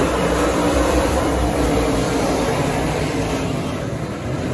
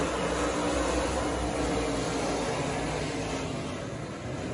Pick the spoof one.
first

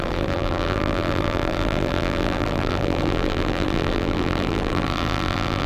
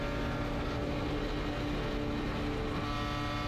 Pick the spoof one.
first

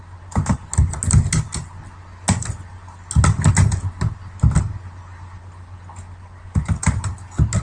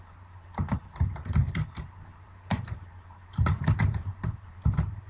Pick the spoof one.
second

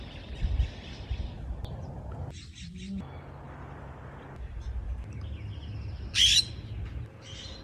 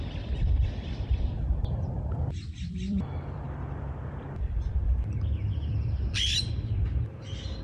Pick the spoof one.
second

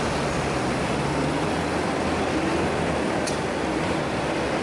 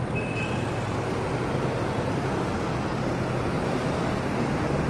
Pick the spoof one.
first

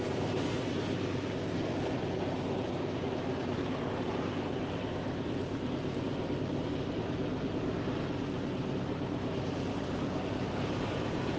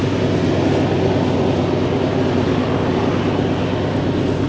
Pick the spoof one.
first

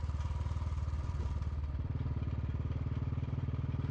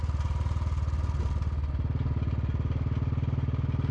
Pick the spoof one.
first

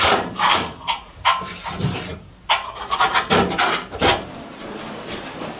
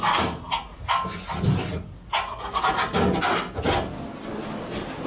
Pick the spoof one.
first